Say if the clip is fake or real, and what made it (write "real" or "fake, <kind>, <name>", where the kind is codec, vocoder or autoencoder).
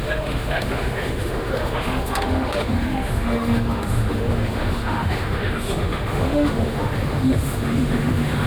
fake, autoencoder, DAC-VAE